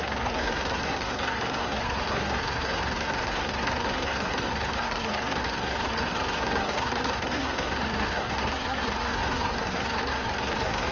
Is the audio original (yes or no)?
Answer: no